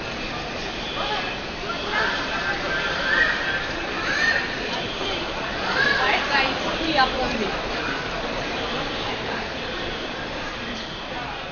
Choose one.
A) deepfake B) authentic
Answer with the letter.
A